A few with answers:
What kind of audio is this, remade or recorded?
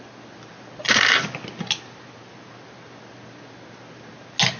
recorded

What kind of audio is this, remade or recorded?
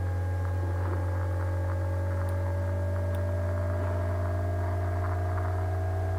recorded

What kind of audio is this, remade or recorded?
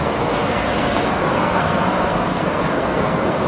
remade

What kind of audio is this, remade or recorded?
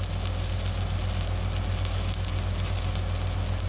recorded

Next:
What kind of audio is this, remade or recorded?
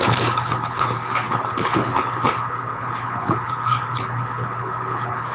remade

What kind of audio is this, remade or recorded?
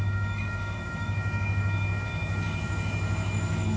remade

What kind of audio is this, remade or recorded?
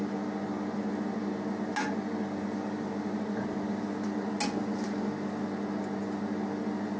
recorded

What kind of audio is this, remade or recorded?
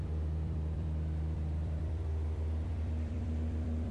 remade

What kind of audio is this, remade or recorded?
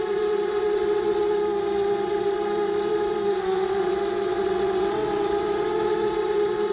remade